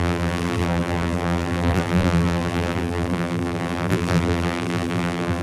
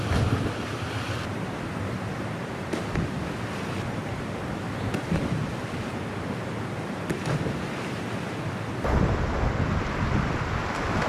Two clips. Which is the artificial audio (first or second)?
first